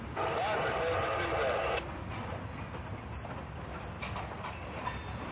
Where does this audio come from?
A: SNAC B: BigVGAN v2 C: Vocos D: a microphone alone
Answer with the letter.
D